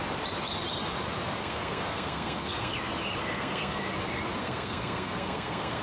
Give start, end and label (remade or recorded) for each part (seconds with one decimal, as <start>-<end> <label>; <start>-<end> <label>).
0.0-1.4 recorded; 1.4-2.7 remade; 2.7-3.2 recorded; 3.2-3.8 remade; 3.8-4.4 recorded; 4.4-5.8 remade